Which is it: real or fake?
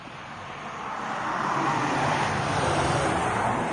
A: fake